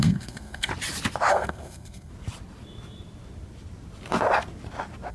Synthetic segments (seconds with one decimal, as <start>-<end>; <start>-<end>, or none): 0.0-0.7; 1.3-2.1